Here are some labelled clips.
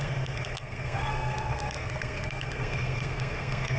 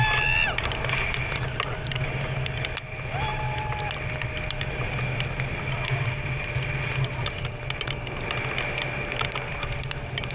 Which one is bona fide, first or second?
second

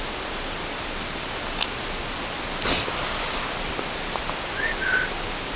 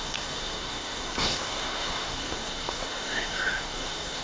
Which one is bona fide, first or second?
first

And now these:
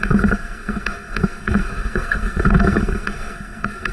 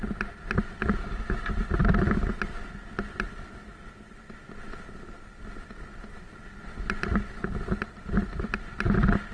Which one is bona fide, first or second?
second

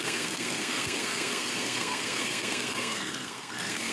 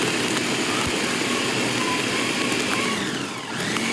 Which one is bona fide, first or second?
second